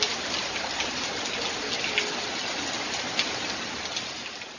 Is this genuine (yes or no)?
yes